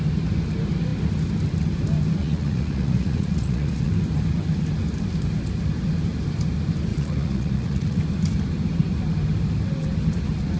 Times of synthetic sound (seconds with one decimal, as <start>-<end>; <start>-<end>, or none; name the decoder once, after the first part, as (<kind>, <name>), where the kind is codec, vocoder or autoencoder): 2.2-3.9 (vocoder, Vocos); 6.9-8.0